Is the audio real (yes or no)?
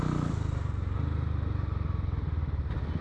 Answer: yes